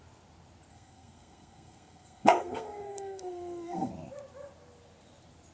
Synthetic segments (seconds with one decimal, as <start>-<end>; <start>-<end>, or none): 0.7-3.9

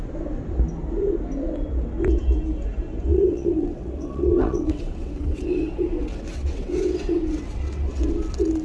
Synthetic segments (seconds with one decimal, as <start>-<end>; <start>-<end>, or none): 3.1-8.0

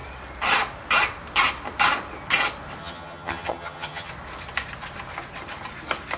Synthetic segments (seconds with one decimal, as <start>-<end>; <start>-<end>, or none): 2.8-4.1

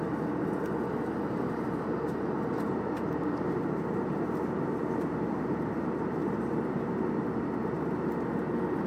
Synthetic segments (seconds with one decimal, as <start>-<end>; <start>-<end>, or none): none

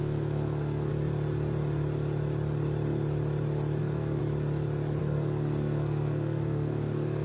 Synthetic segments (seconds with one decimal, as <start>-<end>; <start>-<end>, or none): 0.0-0.9; 3.8-4.2; 5.0-7.2

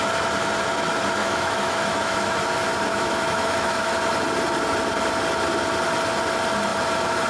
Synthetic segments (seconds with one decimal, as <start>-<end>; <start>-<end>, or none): 1.2-2.4; 2.9-3.9

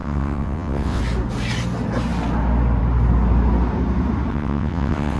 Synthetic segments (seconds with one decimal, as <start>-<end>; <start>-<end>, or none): 0.0-1.0; 4.3-5.2

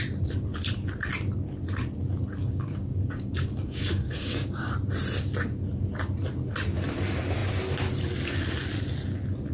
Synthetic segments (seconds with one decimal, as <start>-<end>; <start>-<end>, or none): 2.4-4.7